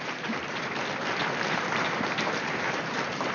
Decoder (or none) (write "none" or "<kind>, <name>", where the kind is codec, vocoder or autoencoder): vocoder, BigVGAN v2